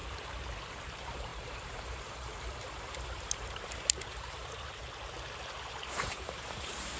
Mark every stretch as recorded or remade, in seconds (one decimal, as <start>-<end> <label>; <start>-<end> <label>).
0.0-0.8 recorded; 0.8-4.8 remade; 4.8-5.7 recorded; 5.7-7.0 remade